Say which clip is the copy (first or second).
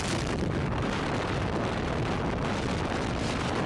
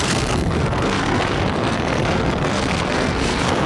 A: second